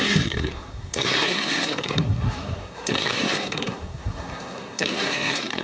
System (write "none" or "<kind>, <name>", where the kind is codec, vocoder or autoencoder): codec, SNAC